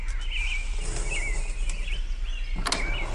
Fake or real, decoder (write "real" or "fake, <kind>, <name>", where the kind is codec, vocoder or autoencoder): real